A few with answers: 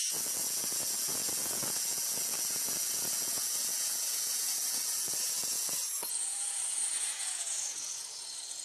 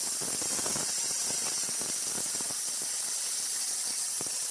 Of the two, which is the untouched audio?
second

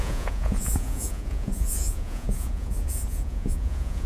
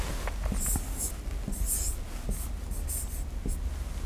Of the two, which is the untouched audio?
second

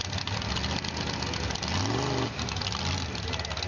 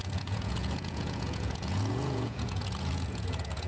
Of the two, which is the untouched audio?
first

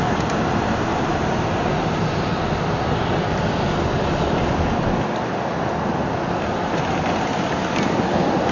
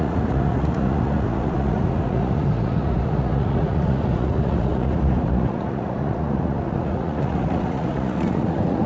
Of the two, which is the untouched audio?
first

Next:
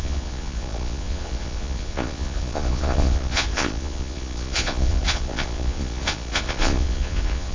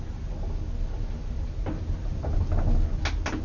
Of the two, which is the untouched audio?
second